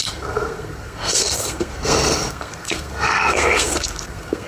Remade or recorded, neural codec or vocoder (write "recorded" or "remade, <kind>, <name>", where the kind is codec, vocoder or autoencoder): remade, codec, SNAC